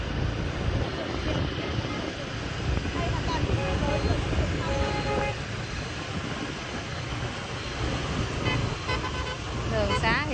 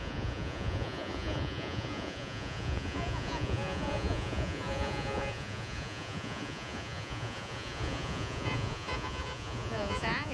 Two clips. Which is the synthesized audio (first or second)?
second